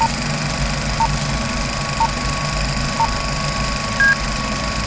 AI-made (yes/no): no